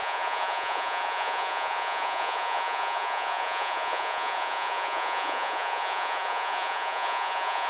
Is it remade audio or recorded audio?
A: remade